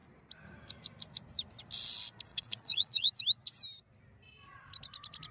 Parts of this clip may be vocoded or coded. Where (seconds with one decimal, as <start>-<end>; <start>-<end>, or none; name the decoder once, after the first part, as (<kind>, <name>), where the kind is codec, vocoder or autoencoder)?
2.3-3.1 (vocoder, Vocos)

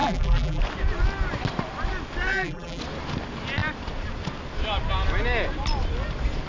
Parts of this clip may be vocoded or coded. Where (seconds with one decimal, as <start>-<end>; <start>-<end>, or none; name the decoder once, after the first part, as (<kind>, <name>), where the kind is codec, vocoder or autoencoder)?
0.0-0.6 (vocoder, BigVGAN v2); 2.3-2.8

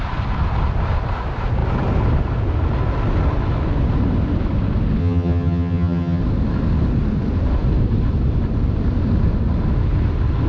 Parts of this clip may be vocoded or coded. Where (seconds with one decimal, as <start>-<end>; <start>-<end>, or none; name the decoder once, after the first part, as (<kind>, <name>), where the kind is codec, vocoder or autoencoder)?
5.0-6.2 (vocoder, HiFi-GAN)

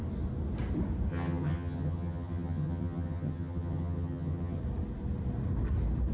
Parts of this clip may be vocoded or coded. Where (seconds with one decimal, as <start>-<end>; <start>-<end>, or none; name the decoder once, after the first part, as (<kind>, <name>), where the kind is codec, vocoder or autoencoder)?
1.1-4.6 (vocoder, HiFi-GAN)

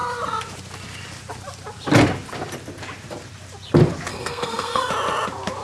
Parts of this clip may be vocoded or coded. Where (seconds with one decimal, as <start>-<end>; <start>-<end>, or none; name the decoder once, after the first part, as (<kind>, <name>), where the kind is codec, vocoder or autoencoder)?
4.1-4.9 (codec, SNAC)